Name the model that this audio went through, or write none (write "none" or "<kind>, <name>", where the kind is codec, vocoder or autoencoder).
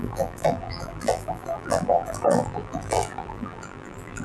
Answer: vocoder, BigVGAN v2